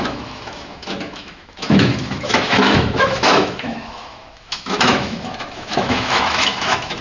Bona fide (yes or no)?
no